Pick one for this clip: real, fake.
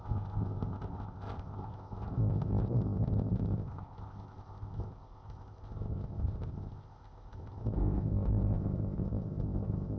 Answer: fake